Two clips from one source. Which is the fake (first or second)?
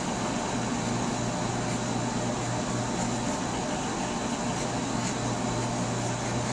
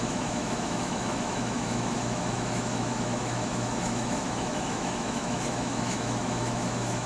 second